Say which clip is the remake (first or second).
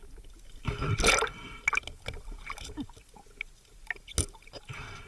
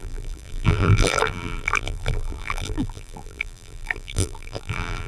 second